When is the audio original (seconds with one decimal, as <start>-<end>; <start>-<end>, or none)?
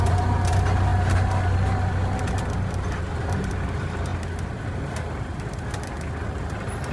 0.0-6.9